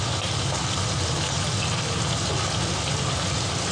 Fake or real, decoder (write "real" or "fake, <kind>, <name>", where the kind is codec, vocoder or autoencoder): real